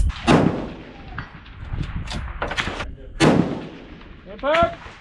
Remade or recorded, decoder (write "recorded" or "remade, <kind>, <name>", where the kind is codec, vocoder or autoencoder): recorded